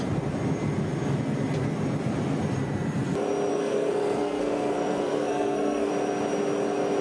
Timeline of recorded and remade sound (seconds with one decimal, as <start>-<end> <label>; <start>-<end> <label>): 0.0-3.5 recorded; 3.5-5.9 remade; 5.9-7.0 recorded